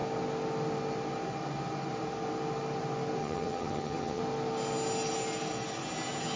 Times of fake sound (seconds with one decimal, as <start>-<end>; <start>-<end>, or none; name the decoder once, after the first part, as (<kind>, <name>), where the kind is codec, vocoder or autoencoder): 3.2-4.2 (vocoder, HiFi-GAN)